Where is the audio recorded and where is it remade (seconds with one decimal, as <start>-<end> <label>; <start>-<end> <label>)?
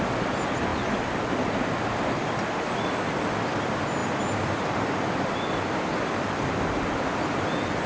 0.0-7.9 recorded